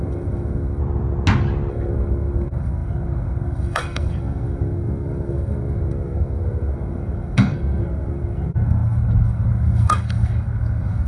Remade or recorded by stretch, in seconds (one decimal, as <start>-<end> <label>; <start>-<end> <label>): 0.0-0.8 remade; 0.8-1.7 recorded; 1.7-11.1 remade